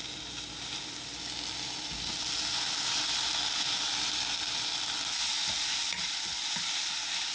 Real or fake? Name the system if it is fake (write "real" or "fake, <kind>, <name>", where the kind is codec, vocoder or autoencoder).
real